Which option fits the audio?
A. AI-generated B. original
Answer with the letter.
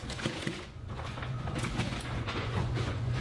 A